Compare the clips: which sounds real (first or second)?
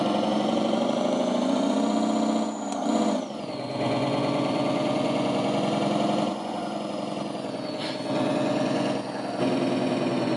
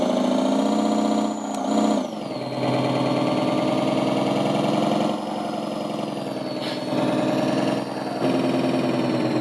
second